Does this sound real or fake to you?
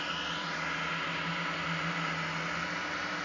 real